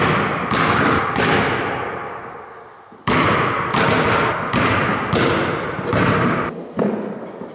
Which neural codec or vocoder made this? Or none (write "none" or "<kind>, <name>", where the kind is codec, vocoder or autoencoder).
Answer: none